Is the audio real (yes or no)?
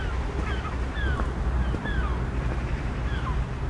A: yes